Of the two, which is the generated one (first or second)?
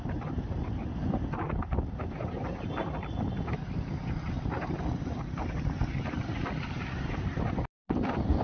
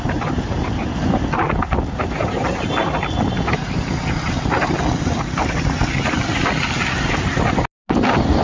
first